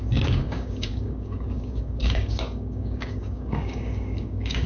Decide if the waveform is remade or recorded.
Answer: remade